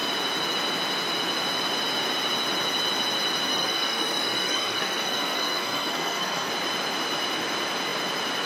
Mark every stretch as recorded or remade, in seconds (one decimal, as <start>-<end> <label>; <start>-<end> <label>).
0.0-3.5 recorded; 3.5-6.5 remade; 6.5-8.5 recorded